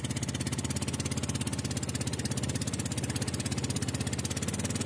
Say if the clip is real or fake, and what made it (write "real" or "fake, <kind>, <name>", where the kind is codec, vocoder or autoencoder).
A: real